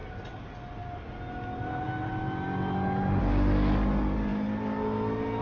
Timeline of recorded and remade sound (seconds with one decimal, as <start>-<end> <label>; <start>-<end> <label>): 0.0-5.4 recorded